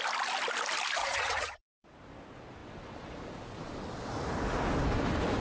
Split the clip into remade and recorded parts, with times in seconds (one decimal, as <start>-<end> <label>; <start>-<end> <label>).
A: 0.0-1.0 recorded; 1.0-1.6 remade; 1.6-5.4 recorded